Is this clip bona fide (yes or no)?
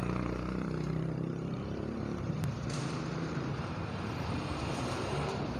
no